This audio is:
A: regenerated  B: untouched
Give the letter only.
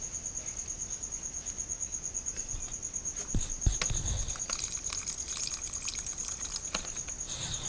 B